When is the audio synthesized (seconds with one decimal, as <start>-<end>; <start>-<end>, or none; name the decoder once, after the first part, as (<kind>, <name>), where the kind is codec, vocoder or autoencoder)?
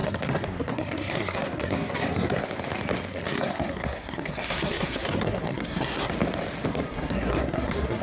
0.0-2.4 (codec, SNAC); 3.1-6.1; 6.7-8.0